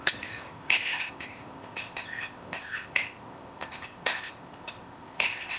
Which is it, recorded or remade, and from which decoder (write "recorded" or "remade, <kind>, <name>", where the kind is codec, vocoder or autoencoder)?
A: remade, codec, ZipCodec